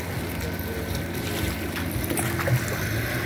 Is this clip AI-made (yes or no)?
no